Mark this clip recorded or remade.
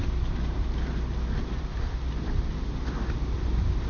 recorded